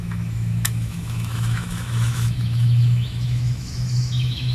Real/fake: fake